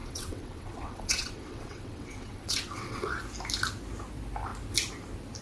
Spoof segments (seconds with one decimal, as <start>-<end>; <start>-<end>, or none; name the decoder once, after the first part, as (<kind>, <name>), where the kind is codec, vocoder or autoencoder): 0.0-3.2 (vocoder, WaveNeXt)